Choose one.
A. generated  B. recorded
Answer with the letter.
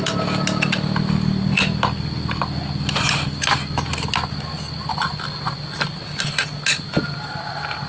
B